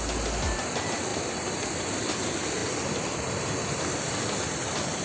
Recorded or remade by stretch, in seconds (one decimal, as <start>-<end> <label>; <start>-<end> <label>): 0.0-1.1 recorded; 1.1-2.0 remade; 2.0-2.6 recorded; 2.6-4.4 remade; 4.4-5.0 recorded